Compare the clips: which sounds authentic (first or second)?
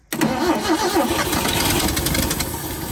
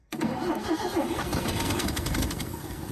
first